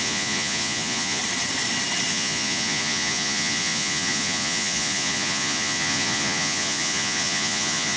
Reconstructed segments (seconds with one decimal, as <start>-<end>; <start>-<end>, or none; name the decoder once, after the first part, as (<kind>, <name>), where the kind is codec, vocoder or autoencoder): 0.0-1.2 (vocoder, Vocos); 2.1-8.0